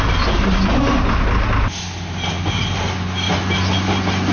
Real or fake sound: real